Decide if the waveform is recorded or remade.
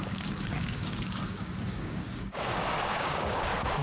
remade